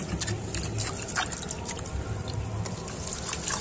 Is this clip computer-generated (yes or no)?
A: yes